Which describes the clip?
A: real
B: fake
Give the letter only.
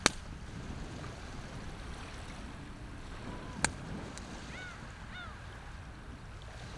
A